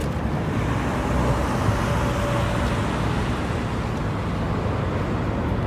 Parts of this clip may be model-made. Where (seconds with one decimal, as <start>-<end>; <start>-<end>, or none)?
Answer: none